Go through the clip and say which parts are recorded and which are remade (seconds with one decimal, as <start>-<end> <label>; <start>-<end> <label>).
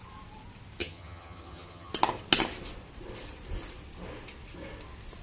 0.0-0.8 recorded; 0.8-1.9 remade; 1.9-5.2 recorded